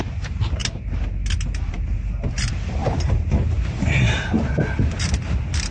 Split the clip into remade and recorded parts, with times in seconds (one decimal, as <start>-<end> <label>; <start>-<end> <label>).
0.0-0.6 remade; 0.6-1.7 recorded; 1.7-5.7 remade